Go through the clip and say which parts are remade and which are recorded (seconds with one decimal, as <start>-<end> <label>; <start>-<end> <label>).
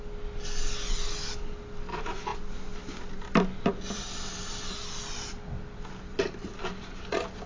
0.0-7.5 recorded